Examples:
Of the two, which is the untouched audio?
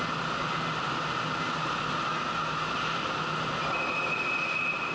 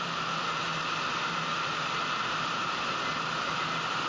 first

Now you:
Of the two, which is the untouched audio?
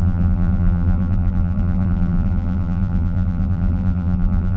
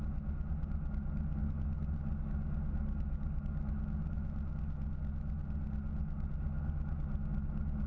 second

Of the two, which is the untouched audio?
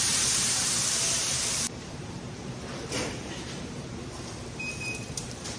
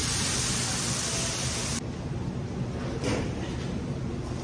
second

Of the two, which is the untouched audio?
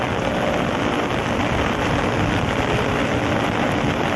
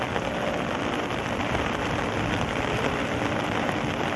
first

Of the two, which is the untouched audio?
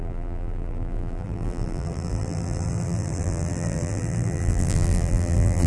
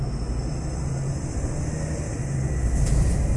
second